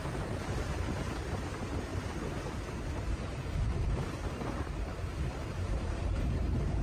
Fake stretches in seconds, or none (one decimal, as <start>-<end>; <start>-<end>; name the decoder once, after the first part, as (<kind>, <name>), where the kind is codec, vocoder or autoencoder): 0.0-1.9 (vocoder, BigVGAN v2); 2.9-6.8